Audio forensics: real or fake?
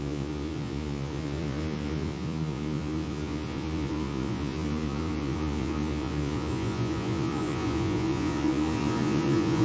fake